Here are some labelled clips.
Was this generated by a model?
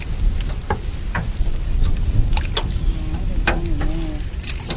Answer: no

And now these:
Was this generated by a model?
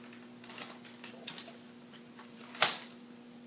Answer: yes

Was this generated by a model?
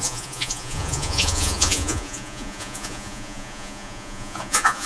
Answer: yes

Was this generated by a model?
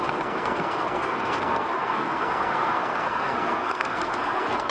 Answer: yes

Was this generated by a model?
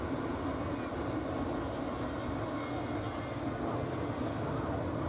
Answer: no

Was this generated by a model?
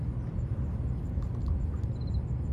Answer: no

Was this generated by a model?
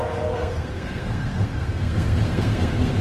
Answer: yes